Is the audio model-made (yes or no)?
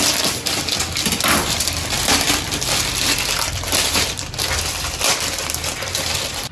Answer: yes